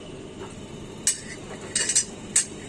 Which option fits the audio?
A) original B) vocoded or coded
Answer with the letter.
A